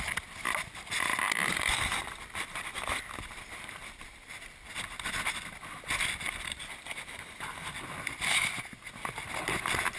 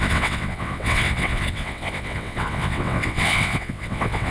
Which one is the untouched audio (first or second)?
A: first